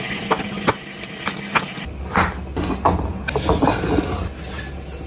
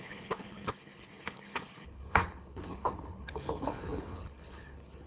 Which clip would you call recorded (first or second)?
first